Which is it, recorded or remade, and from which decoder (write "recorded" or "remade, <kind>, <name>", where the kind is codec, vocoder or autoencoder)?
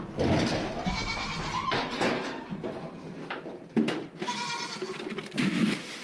remade, vocoder, BigVGAN v2